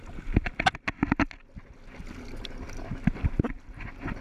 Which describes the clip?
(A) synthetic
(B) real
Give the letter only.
B